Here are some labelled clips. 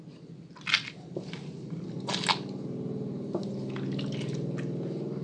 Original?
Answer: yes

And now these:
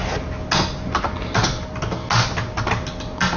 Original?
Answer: yes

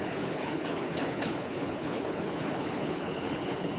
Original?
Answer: no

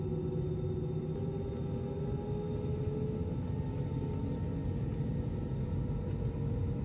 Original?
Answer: yes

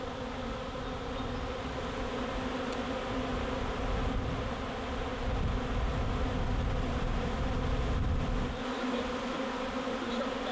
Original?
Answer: yes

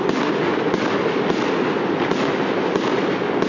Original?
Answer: yes